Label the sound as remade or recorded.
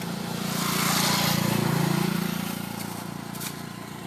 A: recorded